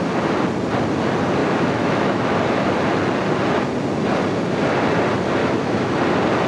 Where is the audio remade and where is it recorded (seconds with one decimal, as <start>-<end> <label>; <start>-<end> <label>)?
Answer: 0.0-1.4 recorded; 1.4-2.2 remade; 2.2-5.4 recorded; 5.4-5.9 remade; 5.9-6.5 recorded